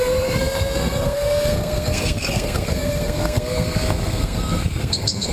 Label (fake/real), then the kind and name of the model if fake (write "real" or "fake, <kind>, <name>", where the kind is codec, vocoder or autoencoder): fake, codec, SNAC